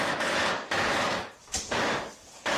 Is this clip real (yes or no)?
no